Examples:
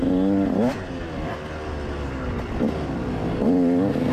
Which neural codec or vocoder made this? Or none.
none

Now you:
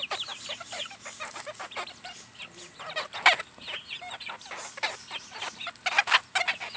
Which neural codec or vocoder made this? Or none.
none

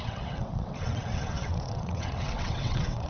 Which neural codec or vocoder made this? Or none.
vocoder, WaveNeXt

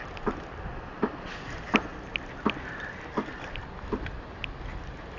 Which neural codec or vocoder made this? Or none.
none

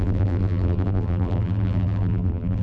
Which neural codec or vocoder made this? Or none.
vocoder, BigVGAN v2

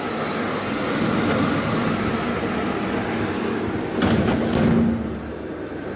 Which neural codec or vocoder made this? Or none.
none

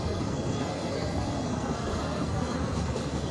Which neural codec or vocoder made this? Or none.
codec, SNAC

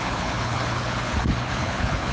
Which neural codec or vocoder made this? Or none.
codec, HILCodec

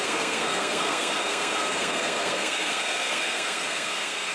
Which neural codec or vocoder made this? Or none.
codec, SNAC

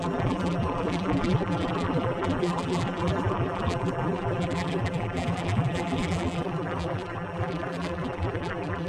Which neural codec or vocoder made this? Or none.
vocoder, BigVGAN v2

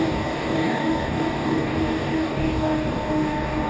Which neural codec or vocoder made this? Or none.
codec, DAC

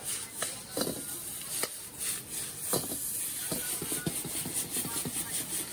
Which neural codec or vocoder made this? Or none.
none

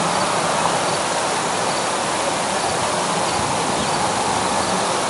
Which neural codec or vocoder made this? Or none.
none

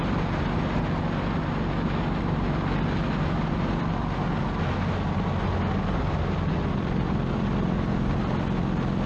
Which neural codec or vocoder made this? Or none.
none